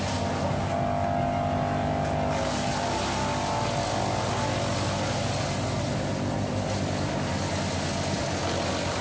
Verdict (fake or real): real